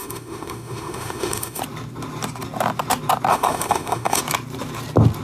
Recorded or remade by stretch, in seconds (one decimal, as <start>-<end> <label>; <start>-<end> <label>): 0.0-1.6 remade; 1.6-3.3 recorded; 3.3-4.2 remade; 4.2-5.2 recorded